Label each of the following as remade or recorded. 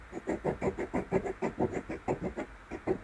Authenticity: recorded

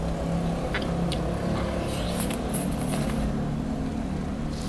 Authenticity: recorded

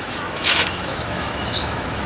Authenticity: remade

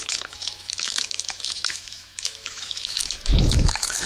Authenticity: remade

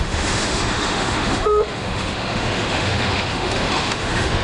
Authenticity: remade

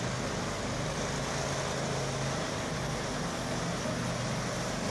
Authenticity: recorded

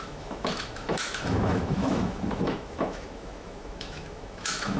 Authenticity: remade